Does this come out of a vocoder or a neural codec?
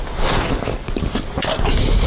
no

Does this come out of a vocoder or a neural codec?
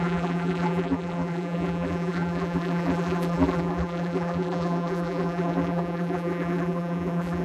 yes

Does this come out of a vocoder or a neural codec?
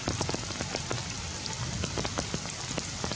no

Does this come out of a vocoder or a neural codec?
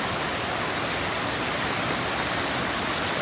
no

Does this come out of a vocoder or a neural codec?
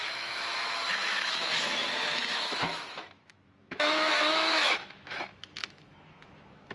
yes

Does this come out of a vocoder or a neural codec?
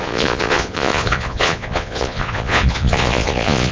yes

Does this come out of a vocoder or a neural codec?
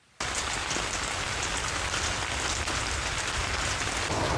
no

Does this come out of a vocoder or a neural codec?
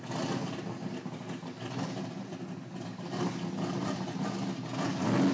no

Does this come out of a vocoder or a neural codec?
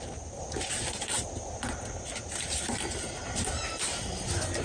no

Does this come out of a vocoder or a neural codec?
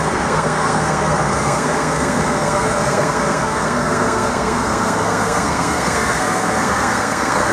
yes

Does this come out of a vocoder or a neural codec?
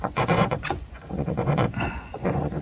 yes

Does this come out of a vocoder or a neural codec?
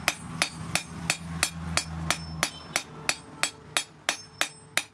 no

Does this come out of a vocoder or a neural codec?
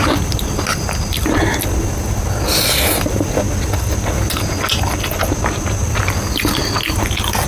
no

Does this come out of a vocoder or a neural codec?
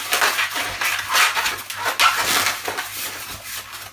no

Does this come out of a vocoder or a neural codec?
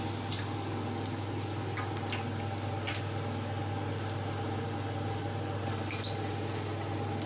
no